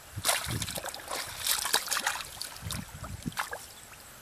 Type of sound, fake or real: real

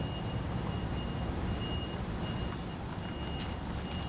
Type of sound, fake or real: real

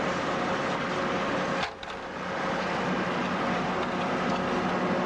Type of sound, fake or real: real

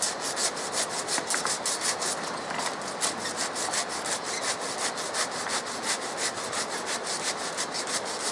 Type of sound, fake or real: real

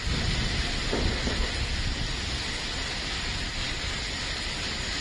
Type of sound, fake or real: real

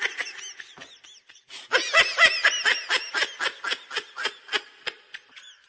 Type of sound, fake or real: real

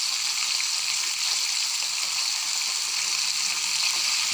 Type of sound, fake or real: real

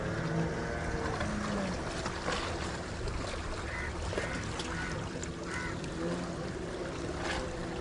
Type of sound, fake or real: real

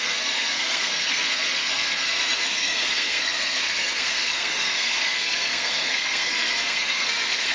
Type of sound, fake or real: fake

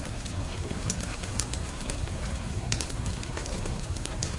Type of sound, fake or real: fake